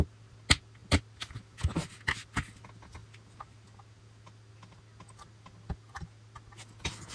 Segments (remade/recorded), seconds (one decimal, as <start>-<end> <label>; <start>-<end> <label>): 0.0-7.1 recorded